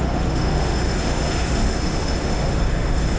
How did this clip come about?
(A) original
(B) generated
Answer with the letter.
B